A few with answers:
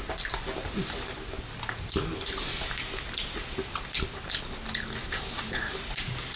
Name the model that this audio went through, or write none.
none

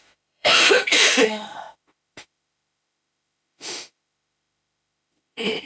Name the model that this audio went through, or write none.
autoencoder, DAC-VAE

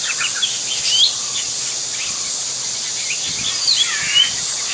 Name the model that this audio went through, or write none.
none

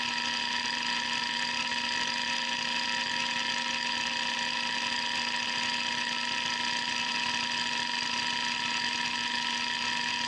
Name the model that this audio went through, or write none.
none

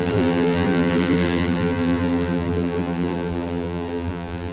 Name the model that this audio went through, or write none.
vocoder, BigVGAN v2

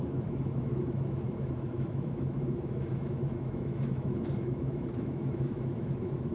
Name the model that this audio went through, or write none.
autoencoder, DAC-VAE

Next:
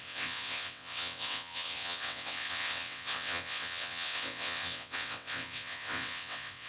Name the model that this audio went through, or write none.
vocoder, WaveNeXt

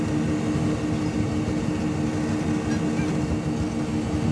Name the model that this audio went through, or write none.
none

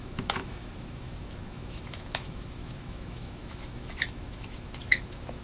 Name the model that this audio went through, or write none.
autoencoder, DAC-VAE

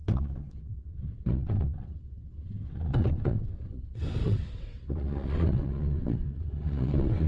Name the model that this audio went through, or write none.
vocoder, WaveNeXt